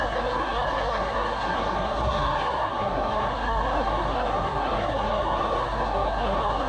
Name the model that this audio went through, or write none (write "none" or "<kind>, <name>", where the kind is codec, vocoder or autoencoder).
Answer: codec, SNAC